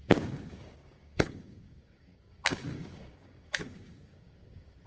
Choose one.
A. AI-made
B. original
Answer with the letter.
A